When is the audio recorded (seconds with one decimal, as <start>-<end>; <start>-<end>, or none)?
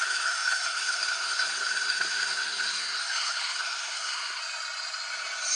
4.4-5.6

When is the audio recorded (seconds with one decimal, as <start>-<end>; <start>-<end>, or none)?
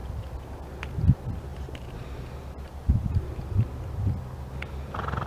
0.0-1.5; 3.7-5.3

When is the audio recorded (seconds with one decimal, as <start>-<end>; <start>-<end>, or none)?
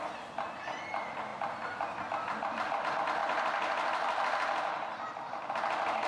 0.0-6.1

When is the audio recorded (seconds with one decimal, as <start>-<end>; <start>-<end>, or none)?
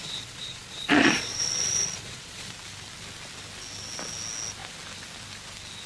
2.5-5.9